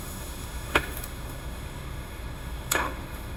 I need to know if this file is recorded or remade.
remade